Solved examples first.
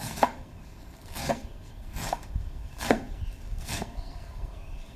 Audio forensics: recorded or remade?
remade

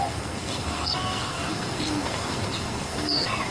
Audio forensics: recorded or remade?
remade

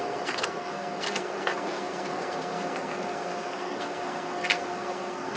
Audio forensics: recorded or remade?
remade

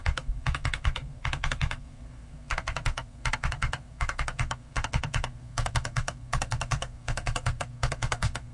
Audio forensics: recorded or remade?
remade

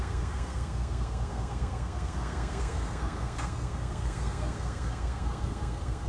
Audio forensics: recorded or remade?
remade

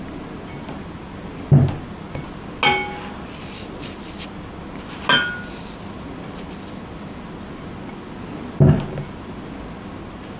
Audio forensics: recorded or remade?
recorded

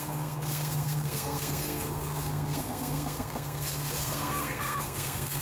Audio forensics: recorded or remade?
remade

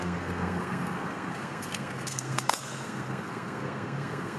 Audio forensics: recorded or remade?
remade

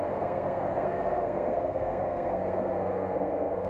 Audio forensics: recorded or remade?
remade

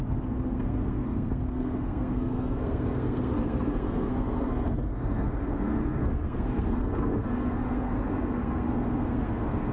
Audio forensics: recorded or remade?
remade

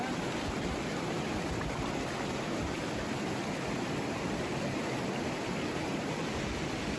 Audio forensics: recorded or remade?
recorded